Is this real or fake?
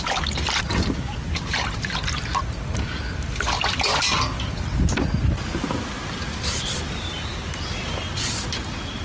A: real